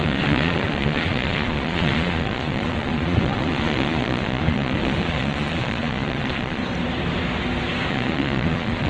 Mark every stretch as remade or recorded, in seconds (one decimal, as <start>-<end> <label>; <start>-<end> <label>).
0.0-6.6 remade; 6.6-7.9 recorded; 7.9-8.9 remade